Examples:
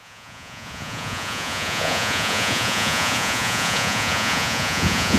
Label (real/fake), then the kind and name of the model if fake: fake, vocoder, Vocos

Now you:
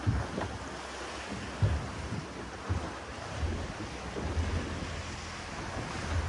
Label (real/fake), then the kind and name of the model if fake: real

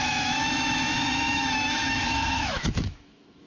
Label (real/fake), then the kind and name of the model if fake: fake, autoencoder, DAC-VAE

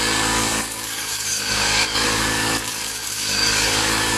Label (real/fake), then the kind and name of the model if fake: fake, codec, DAC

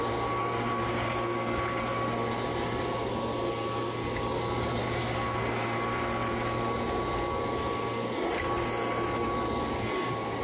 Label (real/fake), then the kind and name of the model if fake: real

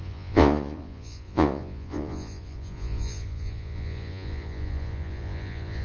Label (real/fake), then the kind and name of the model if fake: fake, vocoder, Vocos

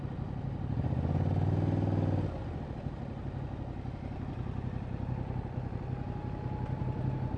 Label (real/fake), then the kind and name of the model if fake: real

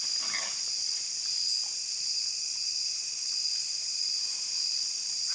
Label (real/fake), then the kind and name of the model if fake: real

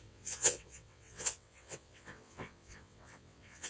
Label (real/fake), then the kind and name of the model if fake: fake, vocoder, WaveNeXt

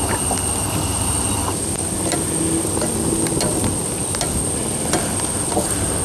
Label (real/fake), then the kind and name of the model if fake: real